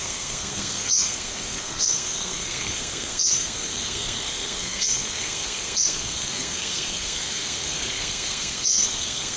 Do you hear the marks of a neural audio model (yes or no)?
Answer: yes